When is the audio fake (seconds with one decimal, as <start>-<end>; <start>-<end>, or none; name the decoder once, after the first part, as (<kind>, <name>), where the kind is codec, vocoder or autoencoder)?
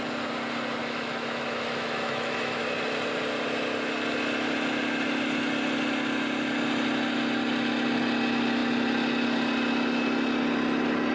0.8-2.6 (autoencoder, DAC-VAE)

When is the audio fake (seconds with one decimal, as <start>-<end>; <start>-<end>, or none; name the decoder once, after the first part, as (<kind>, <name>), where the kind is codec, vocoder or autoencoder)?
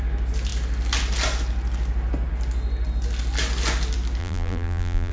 4.2-5.1 (vocoder, BigVGAN v2)